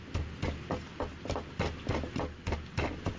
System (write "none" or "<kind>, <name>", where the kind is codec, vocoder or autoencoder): none